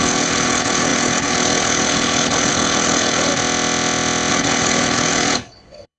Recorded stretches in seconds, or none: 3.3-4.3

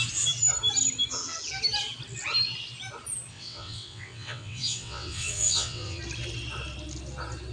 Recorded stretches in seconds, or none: 0.0-3.3; 6.0-7.5

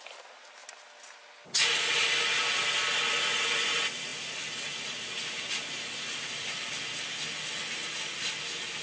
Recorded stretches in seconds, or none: 0.0-8.8